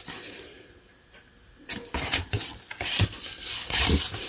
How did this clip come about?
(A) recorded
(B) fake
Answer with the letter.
A